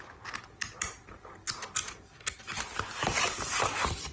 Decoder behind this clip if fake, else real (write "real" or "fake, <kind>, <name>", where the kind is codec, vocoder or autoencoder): real